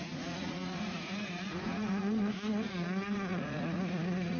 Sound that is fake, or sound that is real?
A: fake